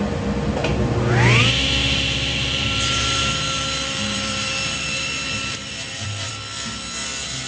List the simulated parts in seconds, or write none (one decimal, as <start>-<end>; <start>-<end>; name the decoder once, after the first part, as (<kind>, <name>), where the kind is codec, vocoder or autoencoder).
1.8-6.3 (vocoder, BigVGAN v2)